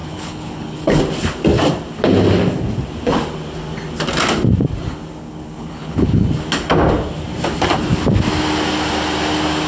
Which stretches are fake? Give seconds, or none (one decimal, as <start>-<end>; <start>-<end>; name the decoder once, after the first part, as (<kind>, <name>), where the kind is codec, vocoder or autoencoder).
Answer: 0.0-1.0 (codec, HILCodec); 5.2-6.3